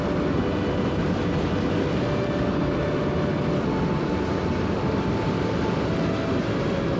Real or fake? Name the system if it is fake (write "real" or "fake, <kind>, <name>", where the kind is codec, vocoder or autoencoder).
real